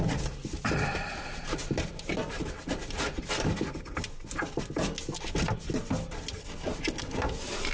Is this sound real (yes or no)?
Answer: yes